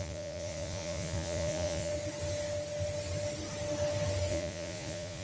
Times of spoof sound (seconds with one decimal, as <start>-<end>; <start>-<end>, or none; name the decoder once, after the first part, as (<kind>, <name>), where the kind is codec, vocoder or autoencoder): 0.0-1.9 (vocoder, Vocos); 4.3-5.2